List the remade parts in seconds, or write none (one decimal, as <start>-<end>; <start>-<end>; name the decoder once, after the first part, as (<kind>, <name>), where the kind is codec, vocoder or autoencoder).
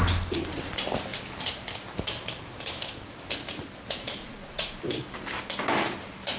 4.2-4.8 (vocoder, Vocos)